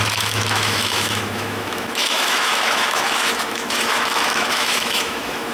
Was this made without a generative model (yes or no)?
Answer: no